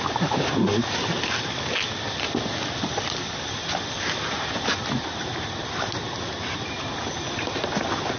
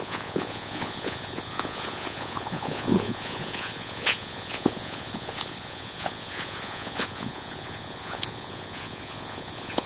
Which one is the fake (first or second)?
second